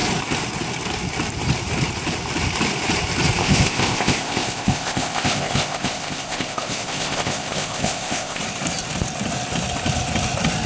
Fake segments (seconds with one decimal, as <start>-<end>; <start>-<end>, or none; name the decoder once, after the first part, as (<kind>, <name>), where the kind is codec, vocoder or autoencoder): 3.4-8.4 (codec, ZipCodec)